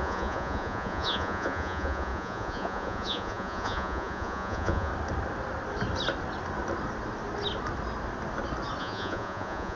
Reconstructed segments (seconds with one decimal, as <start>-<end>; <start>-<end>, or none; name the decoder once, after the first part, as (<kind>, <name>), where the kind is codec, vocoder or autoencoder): 0.0-4.9 (vocoder, Vocos); 8.8-9.8